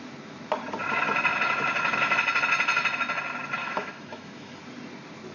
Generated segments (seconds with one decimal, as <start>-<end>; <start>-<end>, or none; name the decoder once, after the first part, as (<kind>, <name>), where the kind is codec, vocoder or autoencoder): 3.6-4.6 (autoencoder, DAC-VAE)